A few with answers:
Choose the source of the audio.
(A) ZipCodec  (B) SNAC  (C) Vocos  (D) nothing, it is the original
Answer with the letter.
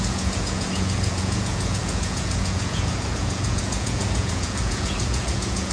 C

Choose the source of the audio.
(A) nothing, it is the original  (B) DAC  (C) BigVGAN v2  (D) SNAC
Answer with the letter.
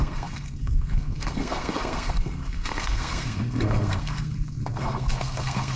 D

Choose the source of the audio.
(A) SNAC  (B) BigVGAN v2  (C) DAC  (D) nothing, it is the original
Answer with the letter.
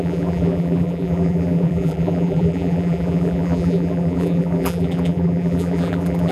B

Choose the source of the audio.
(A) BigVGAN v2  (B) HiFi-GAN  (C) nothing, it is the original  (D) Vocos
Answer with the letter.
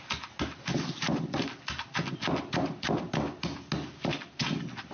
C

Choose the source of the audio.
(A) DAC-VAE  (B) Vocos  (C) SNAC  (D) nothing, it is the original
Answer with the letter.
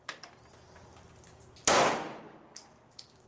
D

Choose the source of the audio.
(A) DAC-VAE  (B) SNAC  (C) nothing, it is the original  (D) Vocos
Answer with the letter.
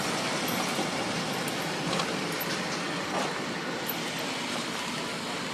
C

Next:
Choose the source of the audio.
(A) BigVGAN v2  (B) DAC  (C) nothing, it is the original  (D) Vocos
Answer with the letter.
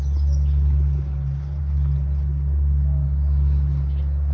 C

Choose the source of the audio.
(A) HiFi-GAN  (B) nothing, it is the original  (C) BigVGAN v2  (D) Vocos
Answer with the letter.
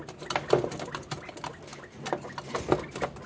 B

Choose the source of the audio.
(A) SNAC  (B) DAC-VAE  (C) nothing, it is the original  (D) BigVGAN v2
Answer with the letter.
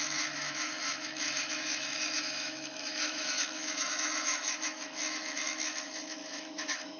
B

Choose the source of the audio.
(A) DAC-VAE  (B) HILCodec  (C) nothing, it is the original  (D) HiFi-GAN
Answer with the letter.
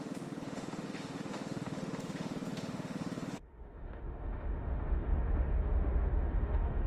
A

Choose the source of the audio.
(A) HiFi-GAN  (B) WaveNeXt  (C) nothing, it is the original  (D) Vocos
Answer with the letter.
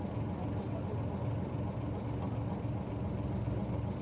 C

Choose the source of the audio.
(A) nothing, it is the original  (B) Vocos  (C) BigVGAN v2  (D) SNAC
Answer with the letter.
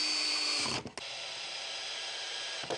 A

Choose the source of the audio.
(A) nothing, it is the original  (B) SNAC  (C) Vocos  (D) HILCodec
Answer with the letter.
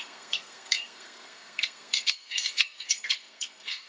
B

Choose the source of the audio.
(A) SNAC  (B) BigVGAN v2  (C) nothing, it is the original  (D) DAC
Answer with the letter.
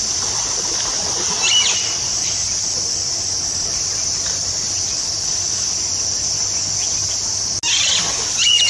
C